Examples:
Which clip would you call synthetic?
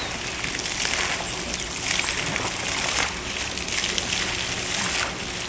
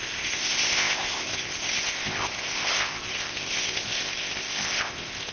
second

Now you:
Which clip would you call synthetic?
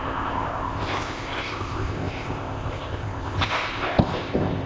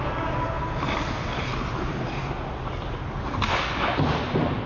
first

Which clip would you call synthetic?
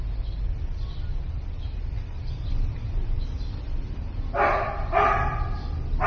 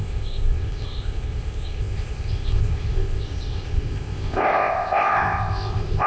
second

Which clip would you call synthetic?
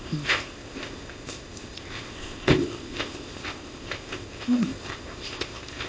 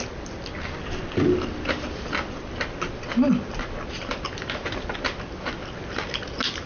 first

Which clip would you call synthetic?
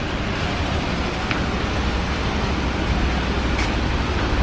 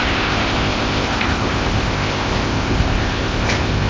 second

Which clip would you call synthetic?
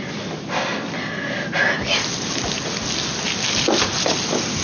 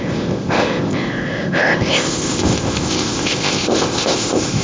second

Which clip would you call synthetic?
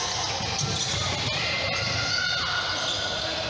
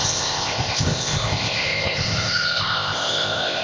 second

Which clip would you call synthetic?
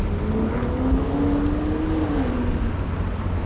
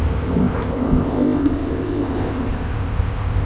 second